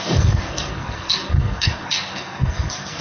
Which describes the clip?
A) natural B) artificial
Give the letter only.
B